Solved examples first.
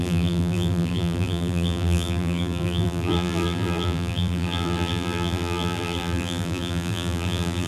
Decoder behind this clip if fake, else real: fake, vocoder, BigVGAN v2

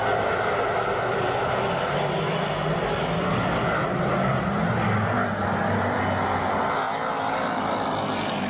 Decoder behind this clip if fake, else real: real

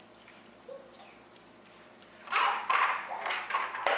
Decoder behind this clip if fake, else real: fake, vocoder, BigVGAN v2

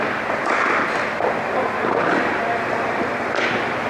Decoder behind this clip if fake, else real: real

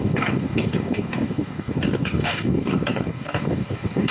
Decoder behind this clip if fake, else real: fake, codec, DAC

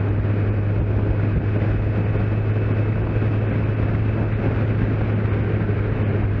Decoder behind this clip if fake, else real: real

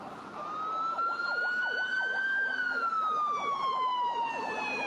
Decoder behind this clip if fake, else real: real